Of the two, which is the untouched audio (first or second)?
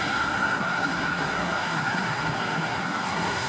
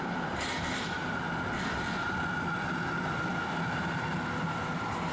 second